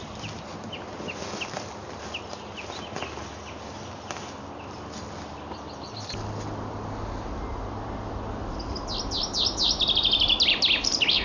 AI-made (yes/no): no